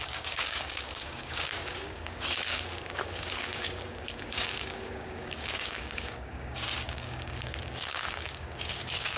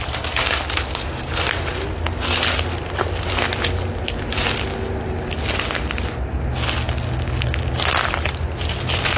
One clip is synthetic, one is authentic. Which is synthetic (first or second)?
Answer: first